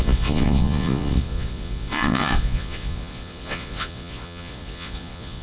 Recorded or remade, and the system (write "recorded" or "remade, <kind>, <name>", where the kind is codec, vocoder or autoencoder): remade, vocoder, Vocos